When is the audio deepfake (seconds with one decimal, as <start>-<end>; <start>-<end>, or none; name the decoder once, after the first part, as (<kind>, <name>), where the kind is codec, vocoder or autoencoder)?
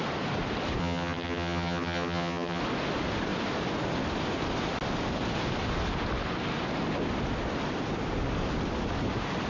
0.8-2.6 (vocoder, HiFi-GAN)